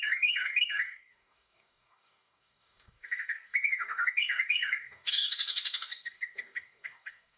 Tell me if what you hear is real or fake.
fake